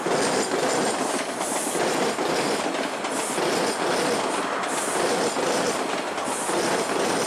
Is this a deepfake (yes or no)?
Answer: no